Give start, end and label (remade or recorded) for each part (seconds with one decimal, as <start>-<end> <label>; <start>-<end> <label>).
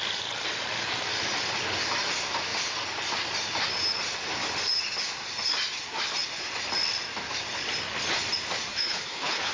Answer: 0.0-8.7 recorded; 8.7-9.5 remade